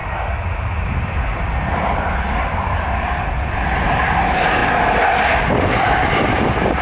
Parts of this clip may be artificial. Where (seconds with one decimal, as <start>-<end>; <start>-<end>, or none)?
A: none